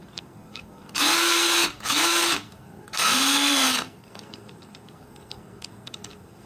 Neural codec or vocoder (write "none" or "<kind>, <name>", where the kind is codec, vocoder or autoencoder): codec, SNAC